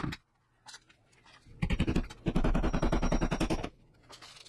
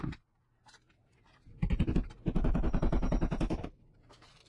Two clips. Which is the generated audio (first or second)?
second